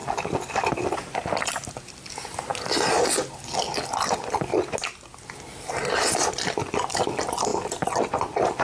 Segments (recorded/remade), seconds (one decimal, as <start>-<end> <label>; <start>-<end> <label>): 0.0-8.6 recorded